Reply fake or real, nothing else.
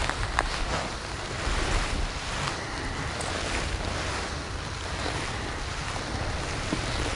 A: real